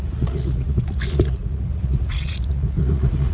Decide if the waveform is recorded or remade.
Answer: remade